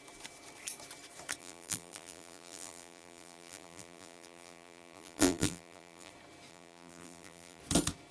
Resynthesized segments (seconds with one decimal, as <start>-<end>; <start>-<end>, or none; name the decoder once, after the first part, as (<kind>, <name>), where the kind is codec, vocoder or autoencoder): 1.4-6.1 (vocoder, BigVGAN v2); 6.5-7.6